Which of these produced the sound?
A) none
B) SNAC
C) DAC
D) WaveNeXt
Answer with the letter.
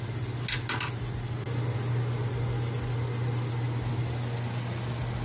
A